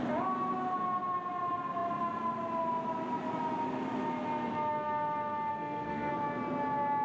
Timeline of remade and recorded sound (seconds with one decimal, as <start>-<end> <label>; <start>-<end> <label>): 0.0-5.5 recorded; 5.5-6.1 remade; 6.1-7.0 recorded